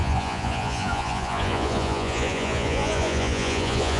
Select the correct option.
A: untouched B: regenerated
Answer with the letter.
B